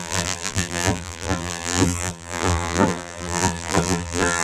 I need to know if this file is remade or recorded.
remade